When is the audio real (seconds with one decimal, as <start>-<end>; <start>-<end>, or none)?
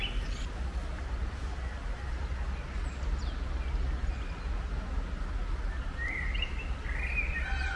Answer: 0.0-7.8